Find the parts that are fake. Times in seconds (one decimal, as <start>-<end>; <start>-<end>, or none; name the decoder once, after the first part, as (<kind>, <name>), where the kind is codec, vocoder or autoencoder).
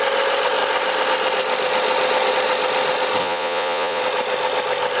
3.2-4.0 (vocoder, Vocos)